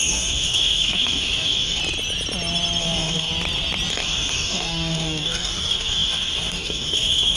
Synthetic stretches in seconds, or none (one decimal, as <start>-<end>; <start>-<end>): 0.0-1.8; 2.8-3.3; 3.9-7.4